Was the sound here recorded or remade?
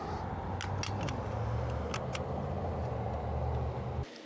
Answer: recorded